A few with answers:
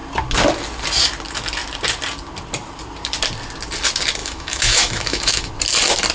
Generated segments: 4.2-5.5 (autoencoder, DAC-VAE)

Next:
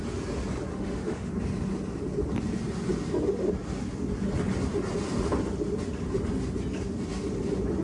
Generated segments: 0.7-1.3 (autoencoder, DAC-VAE)

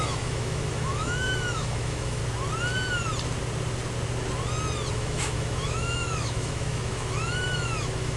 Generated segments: 0.0-2.2 (autoencoder, DAC-VAE); 4.9-8.2